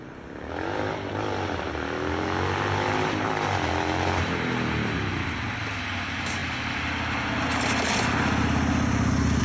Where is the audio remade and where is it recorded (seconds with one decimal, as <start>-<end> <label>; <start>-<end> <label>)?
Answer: 0.0-9.4 recorded